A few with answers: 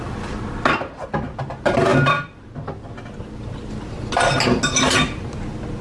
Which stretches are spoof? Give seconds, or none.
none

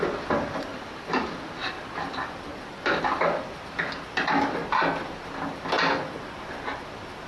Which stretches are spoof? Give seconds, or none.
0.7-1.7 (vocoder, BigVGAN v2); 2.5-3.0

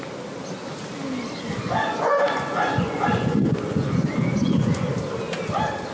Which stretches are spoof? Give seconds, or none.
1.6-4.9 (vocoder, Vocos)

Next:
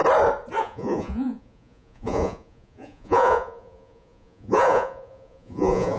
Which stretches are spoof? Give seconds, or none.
0.6-6.0 (vocoder, Vocos)